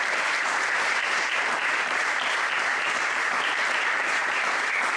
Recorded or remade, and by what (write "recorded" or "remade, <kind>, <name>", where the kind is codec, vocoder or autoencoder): remade, vocoder, BigVGAN v2